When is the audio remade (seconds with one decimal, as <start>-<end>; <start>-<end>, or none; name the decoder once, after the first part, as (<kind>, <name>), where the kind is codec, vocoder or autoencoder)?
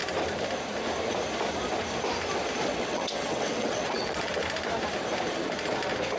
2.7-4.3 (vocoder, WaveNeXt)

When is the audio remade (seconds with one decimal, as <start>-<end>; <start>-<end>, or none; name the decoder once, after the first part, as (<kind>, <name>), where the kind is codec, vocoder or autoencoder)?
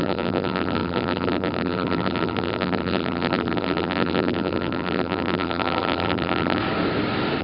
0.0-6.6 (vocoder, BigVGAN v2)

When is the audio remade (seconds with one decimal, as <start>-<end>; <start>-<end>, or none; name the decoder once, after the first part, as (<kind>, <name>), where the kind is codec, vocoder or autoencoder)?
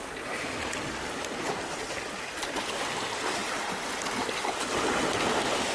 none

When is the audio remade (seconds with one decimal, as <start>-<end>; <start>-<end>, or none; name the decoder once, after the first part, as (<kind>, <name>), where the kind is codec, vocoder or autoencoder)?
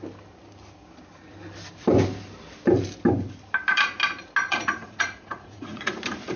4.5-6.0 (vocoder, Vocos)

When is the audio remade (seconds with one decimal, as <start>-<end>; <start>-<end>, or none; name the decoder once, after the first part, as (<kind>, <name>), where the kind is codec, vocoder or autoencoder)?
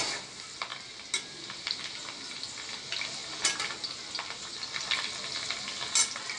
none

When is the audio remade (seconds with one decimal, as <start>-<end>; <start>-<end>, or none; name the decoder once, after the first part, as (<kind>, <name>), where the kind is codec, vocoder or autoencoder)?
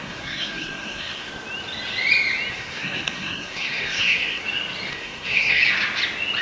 0.0-1.3 (codec, SNAC); 2.5-4.4; 4.9-5.6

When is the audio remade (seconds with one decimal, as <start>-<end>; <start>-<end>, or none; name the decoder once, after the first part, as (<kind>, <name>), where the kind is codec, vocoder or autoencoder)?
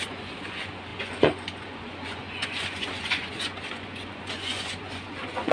0.0-5.5 (vocoder, Vocos)